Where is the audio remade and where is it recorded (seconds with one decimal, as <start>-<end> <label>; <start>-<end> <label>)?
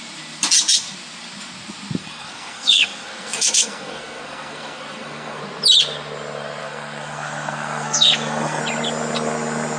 0.0-2.0 recorded; 2.0-5.4 remade; 5.4-6.6 recorded; 6.6-8.6 remade; 8.6-9.8 recorded